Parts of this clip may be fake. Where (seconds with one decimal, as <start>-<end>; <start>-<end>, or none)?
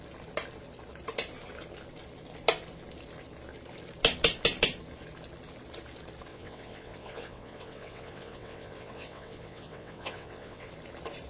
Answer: 6.3-10.7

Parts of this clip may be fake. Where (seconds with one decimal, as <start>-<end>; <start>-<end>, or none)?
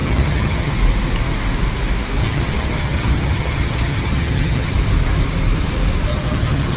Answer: 0.0-0.7; 2.2-4.7; 6.1-6.8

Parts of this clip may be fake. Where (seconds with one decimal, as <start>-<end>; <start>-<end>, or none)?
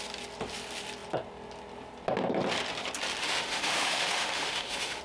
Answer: 3.2-5.0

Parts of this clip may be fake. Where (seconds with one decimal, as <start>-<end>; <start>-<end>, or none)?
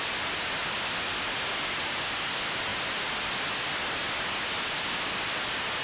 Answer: none